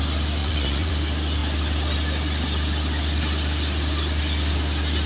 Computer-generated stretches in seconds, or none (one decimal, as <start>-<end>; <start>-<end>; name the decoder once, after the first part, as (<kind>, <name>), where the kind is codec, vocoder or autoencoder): 0.4-0.9 (vocoder, Vocos)